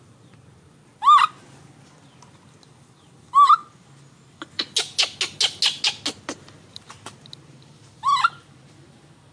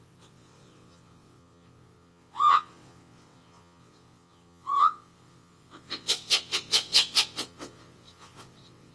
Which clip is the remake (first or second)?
second